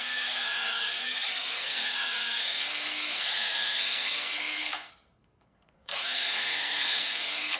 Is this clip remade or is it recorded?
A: remade